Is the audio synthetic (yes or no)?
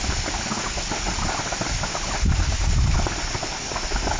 no